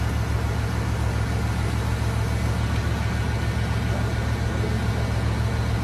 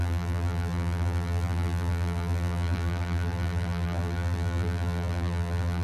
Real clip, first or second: first